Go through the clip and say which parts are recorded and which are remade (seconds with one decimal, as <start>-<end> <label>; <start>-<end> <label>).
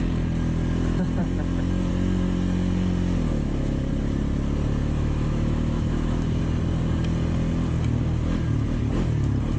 0.0-3.3 recorded; 3.3-3.9 remade; 3.9-4.8 recorded; 4.8-6.4 remade; 6.4-9.6 recorded